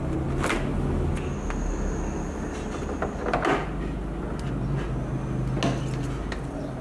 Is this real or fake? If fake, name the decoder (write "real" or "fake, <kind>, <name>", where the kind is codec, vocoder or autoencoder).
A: real